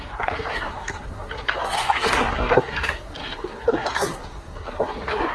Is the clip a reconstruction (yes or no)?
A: yes